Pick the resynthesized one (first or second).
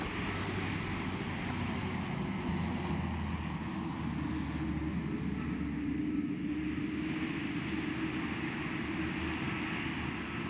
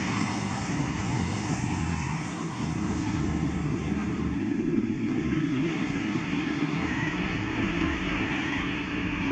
second